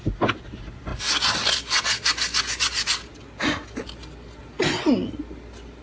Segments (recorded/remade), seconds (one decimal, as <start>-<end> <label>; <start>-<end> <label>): 0.0-5.8 recorded